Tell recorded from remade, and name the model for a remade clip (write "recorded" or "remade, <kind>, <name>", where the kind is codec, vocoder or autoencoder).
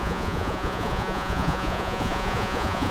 remade, vocoder, Vocos